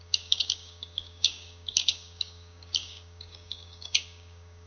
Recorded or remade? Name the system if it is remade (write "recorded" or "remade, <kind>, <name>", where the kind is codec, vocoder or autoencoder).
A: remade, codec, DAC